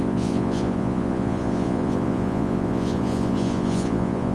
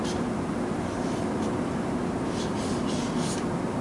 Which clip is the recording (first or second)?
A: second